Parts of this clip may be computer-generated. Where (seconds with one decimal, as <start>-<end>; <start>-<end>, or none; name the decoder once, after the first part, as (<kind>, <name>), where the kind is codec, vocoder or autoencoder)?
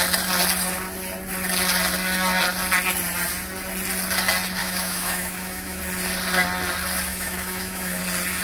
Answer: 4.6-5.8 (autoencoder, DAC-VAE); 7.1-8.0